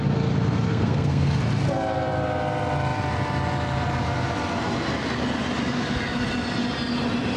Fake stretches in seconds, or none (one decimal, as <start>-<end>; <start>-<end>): 0.7-1.4